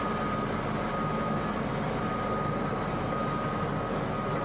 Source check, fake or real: real